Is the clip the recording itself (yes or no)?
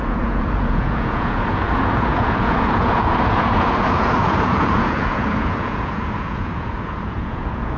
no